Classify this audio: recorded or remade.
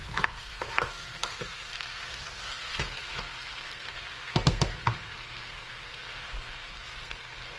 remade